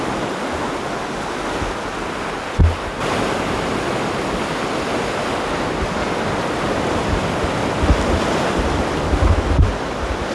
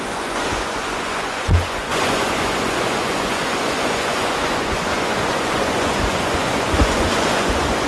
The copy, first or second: second